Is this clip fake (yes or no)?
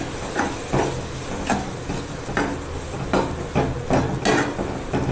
no